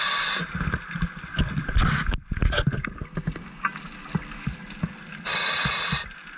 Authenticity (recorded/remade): recorded